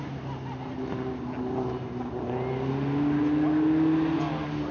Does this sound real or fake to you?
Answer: real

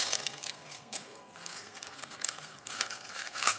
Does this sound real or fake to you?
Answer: fake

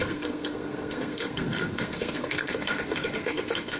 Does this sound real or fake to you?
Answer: fake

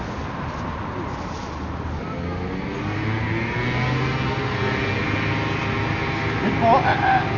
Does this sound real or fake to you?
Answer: real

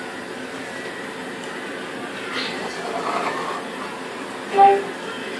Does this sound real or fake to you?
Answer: real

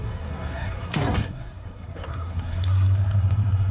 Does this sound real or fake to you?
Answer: fake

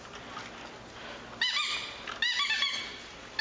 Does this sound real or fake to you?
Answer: real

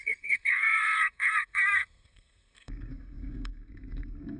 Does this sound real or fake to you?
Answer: fake